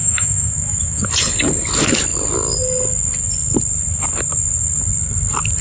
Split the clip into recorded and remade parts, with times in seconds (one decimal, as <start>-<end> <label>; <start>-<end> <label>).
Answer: 0.0-1.1 remade; 1.1-5.6 recorded